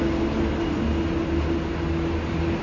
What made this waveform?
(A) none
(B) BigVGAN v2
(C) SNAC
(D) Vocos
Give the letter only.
A